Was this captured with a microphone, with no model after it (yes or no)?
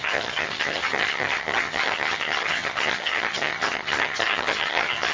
no